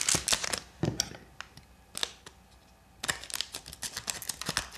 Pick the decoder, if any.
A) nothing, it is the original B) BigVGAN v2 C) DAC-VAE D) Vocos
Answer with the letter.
A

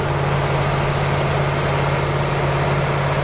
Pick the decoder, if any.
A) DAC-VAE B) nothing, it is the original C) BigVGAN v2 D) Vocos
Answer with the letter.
B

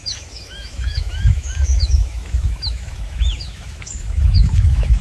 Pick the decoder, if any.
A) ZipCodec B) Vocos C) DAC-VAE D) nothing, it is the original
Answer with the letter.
C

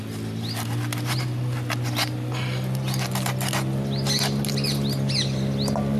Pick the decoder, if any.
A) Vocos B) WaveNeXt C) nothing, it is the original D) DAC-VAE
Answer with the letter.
C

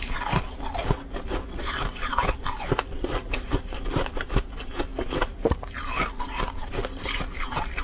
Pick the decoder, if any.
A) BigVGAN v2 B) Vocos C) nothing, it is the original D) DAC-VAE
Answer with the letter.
C